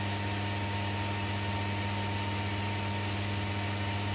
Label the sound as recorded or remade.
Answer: recorded